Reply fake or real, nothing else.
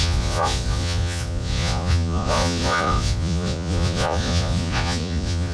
fake